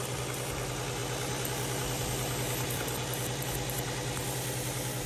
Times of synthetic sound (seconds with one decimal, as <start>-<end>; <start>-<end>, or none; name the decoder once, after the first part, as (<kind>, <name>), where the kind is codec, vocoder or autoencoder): none